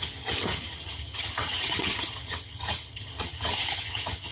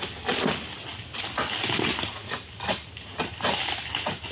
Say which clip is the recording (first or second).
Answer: second